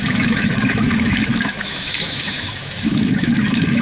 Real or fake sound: fake